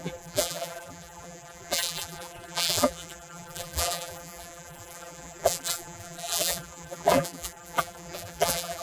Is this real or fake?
fake